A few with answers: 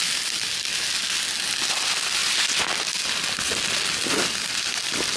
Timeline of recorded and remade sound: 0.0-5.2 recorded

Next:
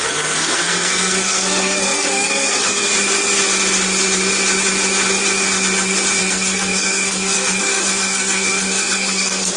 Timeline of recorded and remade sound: 0.0-2.9 remade; 2.9-6.2 recorded; 6.2-9.6 remade

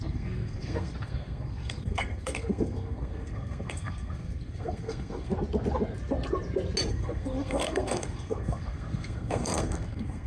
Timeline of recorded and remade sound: 0.0-5.3 remade; 5.3-6.9 recorded; 6.9-10.3 remade

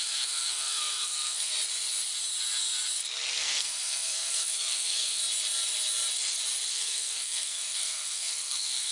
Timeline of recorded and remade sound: 0.0-1.5 remade; 1.5-3.4 recorded; 3.4-5.2 remade; 5.2-6.7 recorded; 6.7-8.9 remade

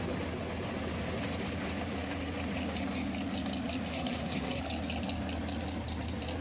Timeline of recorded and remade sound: 0.0-3.9 recorded; 3.9-4.6 remade; 4.6-6.4 recorded

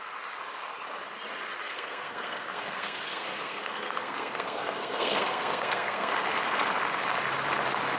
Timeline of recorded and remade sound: 0.0-1.6 recorded; 1.6-6.1 remade; 6.1-8.0 recorded